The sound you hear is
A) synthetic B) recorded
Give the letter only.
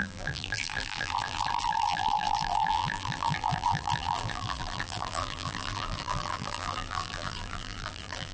A